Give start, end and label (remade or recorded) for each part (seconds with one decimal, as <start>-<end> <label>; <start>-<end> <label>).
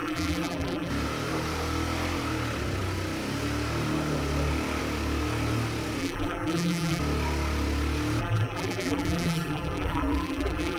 0.0-0.9 remade; 0.9-6.0 recorded; 6.0-7.0 remade; 7.0-8.2 recorded; 8.2-10.8 remade